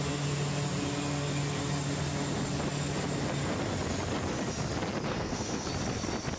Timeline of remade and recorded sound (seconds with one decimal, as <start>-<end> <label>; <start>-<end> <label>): 0.0-5.1 recorded; 5.1-5.7 remade; 5.7-6.4 recorded